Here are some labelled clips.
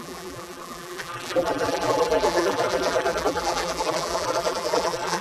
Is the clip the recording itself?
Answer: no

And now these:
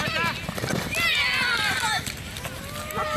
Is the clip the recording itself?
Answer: yes